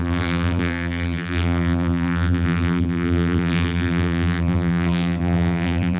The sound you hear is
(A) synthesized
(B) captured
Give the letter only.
A